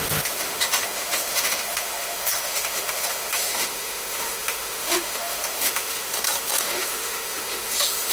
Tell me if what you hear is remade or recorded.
remade